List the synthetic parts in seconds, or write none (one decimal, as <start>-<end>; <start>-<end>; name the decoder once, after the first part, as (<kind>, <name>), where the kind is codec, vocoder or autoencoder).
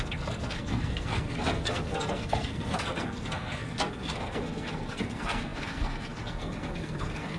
0.0-7.4 (codec, SNAC)